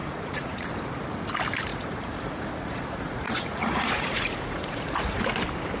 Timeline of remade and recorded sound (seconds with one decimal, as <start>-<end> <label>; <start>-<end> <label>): 0.0-0.7 remade; 0.7-1.7 recorded; 1.7-5.2 remade; 5.2-5.8 recorded